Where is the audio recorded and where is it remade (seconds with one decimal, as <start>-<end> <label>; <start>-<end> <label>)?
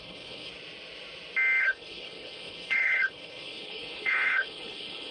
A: 0.0-0.5 remade; 0.5-1.6 recorded; 1.6-5.1 remade